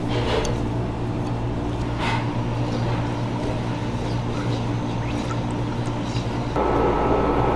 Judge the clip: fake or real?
real